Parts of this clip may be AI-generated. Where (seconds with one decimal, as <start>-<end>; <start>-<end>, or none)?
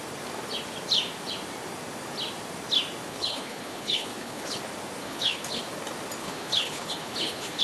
3.1-4.6; 5.0-5.6; 6.2-7.6